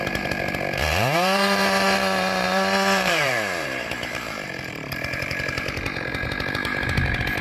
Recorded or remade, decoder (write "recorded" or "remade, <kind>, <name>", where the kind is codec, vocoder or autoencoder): remade, vocoder, BigVGAN v2